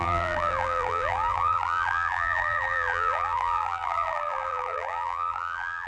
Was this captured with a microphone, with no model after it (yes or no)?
no